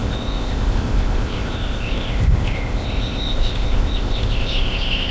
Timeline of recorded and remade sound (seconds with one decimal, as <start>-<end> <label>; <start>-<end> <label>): 0.0-5.1 remade